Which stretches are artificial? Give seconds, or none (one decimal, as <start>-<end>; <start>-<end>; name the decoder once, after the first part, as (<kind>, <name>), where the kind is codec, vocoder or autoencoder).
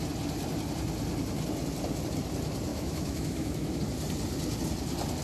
2.7-3.8 (autoencoder, DAC-VAE)